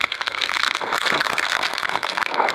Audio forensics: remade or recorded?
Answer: remade